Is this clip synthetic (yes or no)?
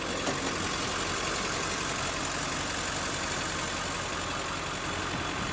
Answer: no